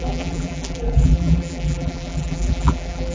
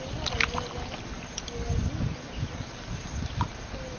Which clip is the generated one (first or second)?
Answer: first